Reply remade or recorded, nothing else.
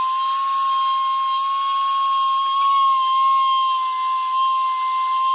recorded